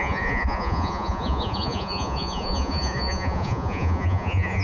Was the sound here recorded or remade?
remade